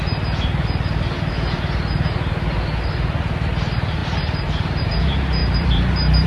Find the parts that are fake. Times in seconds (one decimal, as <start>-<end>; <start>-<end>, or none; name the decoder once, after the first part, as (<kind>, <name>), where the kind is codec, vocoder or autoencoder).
4.0-4.8 (vocoder, BigVGAN v2); 5.4-6.3